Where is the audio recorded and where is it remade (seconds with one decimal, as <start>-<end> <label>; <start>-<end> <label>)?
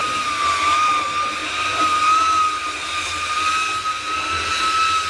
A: 0.0-5.1 recorded